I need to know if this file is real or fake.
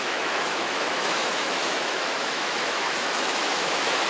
fake